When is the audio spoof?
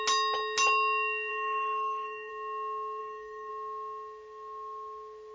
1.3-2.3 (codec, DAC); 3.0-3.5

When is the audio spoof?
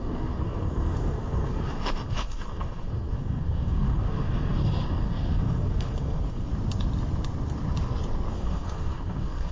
0.0-6.5 (codec, SNAC); 8.3-9.5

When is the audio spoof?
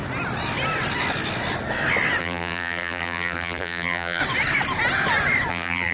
2.2-4.2 (vocoder, BigVGAN v2); 5.5-5.9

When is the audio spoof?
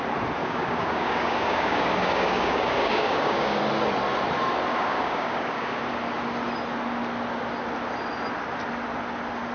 0.4-3.6 (codec, DAC); 4.7-5.8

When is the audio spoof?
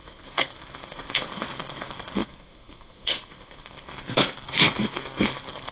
0.0-5.7 (codec, SNAC)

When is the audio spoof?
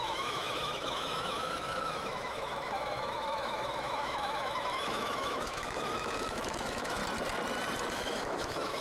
0.0-7.0 (autoencoder, DAC-VAE); 7.9-8.8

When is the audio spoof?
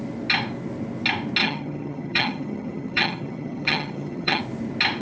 1.4-4.4 (vocoder, HiFi-GAN)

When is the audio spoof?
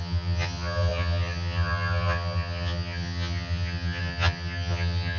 0.0-5.2 (vocoder, HiFi-GAN)